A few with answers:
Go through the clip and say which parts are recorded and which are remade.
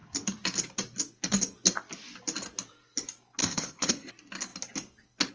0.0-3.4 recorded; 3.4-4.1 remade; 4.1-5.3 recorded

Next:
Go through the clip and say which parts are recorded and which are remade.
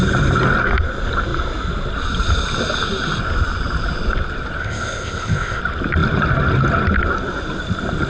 0.0-4.6 recorded; 4.6-5.6 remade; 5.6-8.1 recorded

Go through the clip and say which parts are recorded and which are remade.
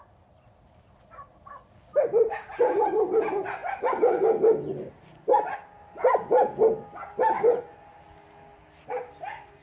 0.0-9.6 recorded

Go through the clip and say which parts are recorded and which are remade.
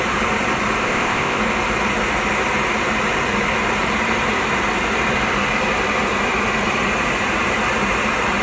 0.0-0.8 recorded; 0.8-1.4 remade; 1.4-8.4 recorded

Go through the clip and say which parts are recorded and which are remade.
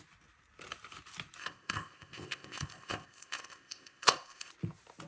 0.0-1.4 recorded; 1.4-4.5 remade; 4.5-5.1 recorded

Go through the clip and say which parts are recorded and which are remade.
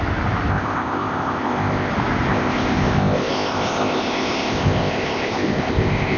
0.0-0.5 recorded; 0.5-1.9 remade; 1.9-2.3 recorded; 2.3-6.2 remade